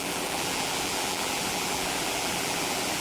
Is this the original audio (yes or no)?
no